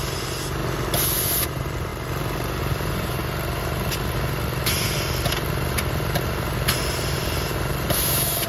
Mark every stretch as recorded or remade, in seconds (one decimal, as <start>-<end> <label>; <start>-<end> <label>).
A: 0.0-0.6 remade; 0.6-1.4 recorded; 1.4-1.9 remade; 1.9-2.6 recorded; 2.6-3.2 remade; 3.2-6.8 recorded; 6.8-8.5 remade